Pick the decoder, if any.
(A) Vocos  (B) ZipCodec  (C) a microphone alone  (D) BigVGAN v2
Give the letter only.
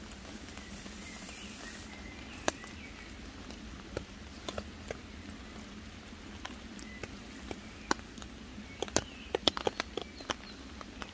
C